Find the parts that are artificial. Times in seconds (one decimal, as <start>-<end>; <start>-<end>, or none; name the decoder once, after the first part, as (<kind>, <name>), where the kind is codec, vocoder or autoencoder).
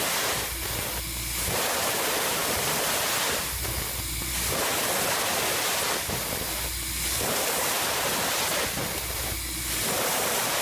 none